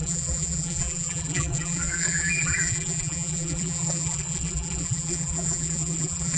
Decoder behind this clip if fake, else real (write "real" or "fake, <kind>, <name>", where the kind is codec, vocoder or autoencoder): fake, vocoder, BigVGAN v2